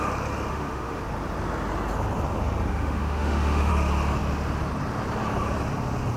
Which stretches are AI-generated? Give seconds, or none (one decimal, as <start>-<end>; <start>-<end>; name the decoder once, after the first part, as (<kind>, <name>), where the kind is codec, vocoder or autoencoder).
0.5-1.0 (autoencoder, DAC-VAE); 2.7-3.7